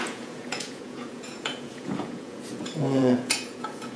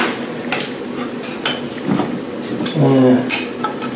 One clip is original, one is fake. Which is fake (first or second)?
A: first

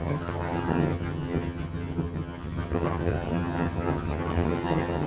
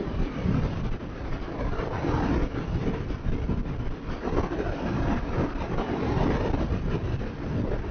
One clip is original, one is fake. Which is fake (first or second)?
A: first